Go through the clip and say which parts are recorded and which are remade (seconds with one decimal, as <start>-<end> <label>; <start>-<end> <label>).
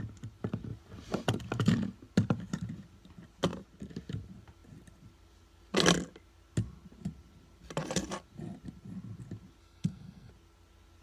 0.0-9.6 recorded; 9.6-10.3 remade; 10.3-11.0 recorded